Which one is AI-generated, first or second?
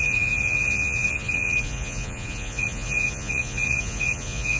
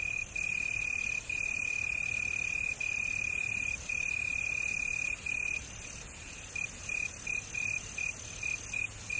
first